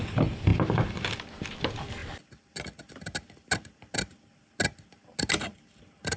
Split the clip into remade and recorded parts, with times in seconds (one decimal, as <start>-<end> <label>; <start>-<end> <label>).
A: 0.0-6.2 recorded